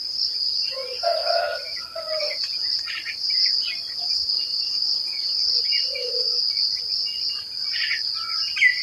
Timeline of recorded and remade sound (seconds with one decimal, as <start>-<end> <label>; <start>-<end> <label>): 0.0-8.8 recorded